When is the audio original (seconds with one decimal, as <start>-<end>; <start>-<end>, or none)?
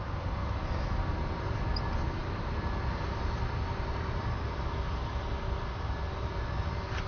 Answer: 0.0-7.1